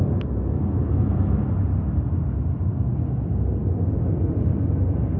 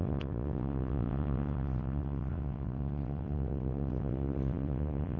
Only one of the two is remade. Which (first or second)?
second